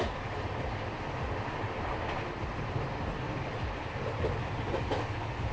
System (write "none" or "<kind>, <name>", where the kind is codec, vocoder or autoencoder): none